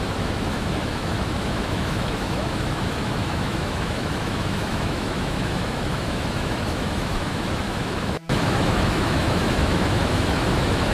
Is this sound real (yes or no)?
no